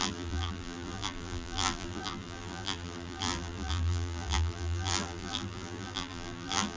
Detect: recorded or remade remade